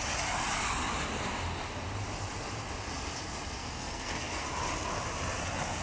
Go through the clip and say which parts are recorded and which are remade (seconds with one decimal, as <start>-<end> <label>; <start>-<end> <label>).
0.0-3.6 recorded; 3.6-4.5 remade; 4.5-5.8 recorded